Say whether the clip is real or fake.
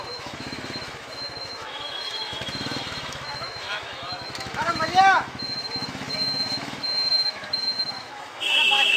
fake